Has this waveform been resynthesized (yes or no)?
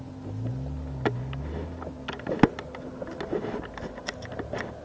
no